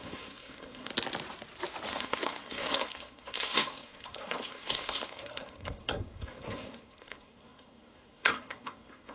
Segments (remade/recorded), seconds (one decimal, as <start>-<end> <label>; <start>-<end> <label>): 0.0-0.9 remade; 0.9-1.9 recorded; 1.9-9.1 remade